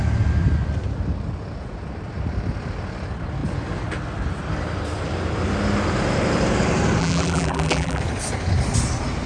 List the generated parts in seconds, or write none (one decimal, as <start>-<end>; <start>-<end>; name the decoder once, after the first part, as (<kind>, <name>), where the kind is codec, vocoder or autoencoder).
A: 7.0-8.0 (vocoder, BigVGAN v2)